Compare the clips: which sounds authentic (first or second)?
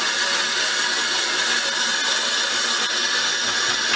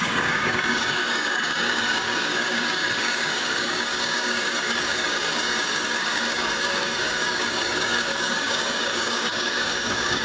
first